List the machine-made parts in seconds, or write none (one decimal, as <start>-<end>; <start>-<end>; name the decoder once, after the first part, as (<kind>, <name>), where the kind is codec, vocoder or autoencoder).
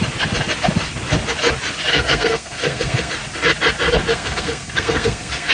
1.9-3.1 (codec, SNAC); 4.1-5.5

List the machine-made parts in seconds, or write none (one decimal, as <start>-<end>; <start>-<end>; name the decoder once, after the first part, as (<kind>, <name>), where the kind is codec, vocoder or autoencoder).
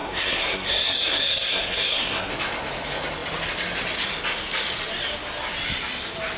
0.0-2.3 (codec, SNAC)